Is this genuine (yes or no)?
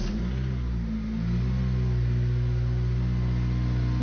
yes